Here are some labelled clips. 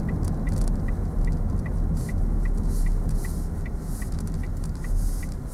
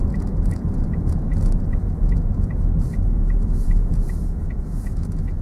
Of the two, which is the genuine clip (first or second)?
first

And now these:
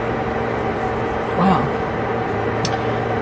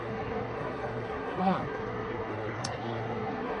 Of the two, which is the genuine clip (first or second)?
first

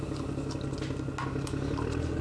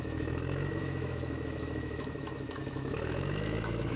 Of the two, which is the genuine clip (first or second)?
first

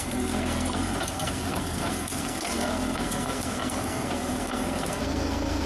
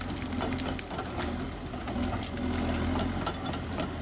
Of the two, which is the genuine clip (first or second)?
second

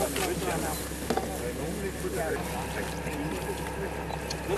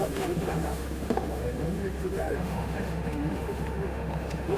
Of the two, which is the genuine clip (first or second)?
first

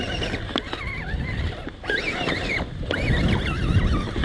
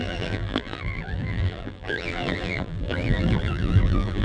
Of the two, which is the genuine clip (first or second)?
first